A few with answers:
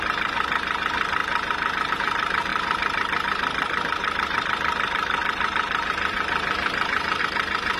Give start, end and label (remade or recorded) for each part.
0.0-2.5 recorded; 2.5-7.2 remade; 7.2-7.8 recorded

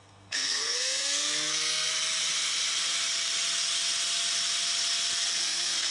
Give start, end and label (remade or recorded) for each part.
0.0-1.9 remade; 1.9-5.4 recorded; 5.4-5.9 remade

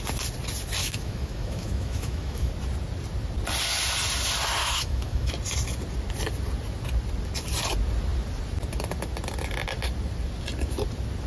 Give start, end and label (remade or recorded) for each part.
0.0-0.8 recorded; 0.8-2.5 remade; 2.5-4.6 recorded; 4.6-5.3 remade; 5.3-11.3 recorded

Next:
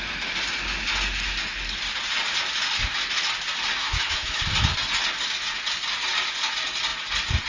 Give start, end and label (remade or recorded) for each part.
0.0-3.8 recorded; 3.8-4.4 remade; 4.4-7.5 recorded

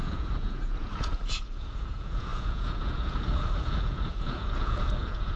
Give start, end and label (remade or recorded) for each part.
0.0-5.4 remade

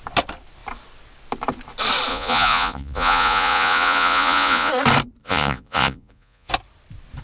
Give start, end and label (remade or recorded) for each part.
0.0-2.1 recorded; 2.1-4.7 remade; 4.7-5.2 recorded; 5.2-6.5 remade; 6.5-7.2 recorded

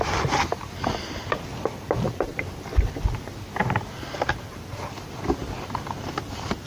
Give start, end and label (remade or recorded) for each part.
0.0-6.7 recorded